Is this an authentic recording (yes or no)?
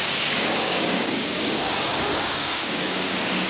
no